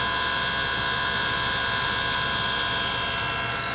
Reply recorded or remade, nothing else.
recorded